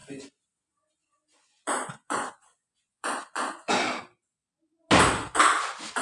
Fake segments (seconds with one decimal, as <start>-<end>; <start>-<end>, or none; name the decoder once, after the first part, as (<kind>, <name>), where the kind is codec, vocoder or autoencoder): 1.0-3.7 (vocoder, Vocos)